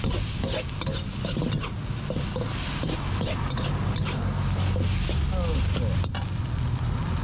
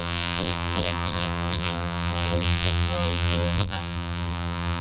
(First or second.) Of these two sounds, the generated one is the second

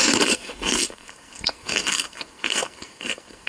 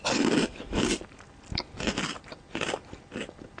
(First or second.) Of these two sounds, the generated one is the first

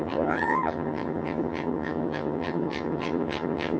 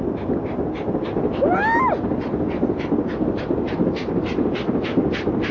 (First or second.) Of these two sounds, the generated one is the first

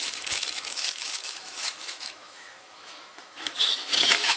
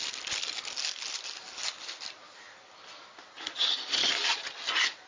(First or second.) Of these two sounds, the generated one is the first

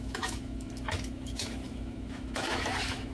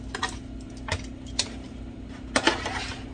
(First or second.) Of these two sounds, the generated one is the first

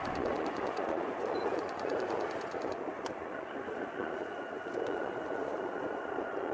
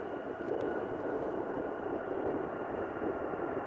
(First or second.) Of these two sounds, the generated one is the first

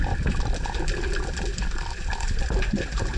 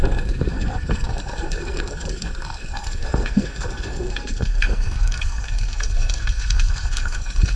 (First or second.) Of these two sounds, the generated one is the second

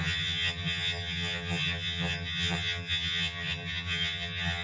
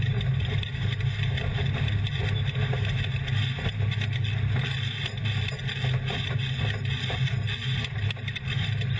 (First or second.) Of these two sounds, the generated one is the first